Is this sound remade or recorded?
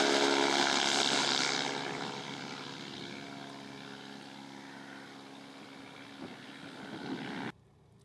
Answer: recorded